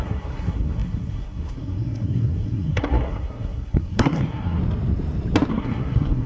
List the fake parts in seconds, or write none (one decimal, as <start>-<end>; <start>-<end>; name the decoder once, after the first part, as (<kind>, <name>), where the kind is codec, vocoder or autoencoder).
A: 0.0-4.6 (codec, SNAC); 5.5-6.3

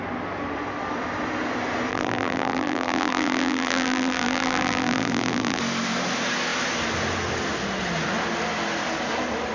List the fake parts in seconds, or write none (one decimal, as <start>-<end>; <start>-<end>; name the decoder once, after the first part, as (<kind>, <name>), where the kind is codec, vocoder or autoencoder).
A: 1.9-5.6 (vocoder, BigVGAN v2)

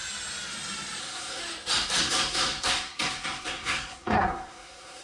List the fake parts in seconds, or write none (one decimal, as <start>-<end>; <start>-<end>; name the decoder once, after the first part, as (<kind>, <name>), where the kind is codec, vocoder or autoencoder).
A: 1.0-1.4 (codec, SNAC); 2.0-5.0

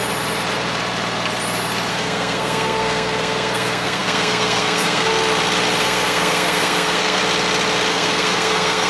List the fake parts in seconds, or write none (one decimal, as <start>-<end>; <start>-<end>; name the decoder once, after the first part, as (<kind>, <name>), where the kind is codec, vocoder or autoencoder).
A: 1.9-5.1 (codec, SNAC); 5.8-7.2; 7.9-8.9